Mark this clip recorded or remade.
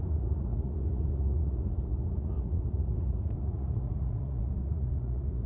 remade